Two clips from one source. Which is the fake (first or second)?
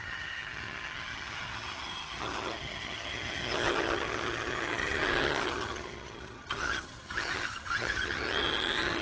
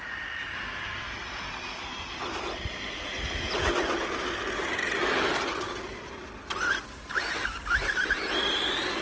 first